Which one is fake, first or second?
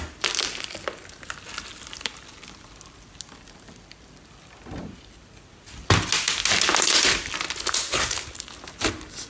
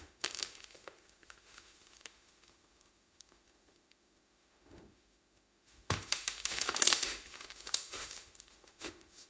second